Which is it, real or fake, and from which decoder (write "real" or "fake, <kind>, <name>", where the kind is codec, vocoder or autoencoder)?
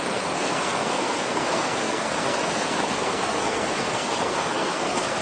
fake, codec, SNAC